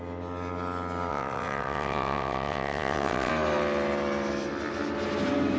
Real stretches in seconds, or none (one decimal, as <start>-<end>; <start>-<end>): 0.0-1.1; 3.3-5.6